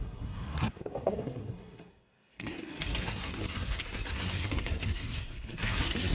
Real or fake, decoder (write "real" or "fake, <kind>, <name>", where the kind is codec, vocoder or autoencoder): fake, codec, SNAC